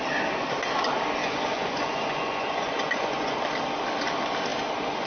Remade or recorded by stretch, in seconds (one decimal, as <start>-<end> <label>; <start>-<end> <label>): 0.0-1.2 recorded; 1.2-3.4 remade; 3.4-5.1 recorded